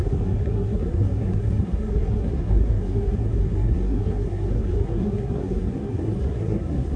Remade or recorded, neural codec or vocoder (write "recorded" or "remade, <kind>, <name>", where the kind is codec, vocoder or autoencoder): remade, codec, SNAC